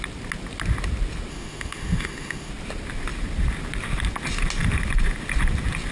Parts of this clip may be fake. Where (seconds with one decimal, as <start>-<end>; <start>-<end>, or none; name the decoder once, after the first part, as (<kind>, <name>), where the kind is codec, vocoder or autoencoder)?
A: 1.3-2.5 (autoencoder, DAC-VAE)